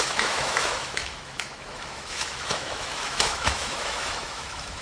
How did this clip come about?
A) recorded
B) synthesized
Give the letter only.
B